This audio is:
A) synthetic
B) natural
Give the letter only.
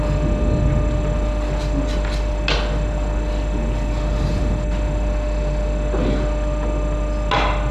B